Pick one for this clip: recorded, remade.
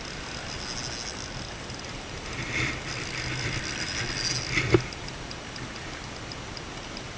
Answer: recorded